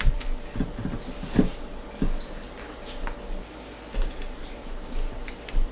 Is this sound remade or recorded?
recorded